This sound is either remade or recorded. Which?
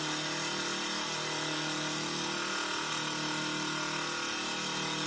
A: recorded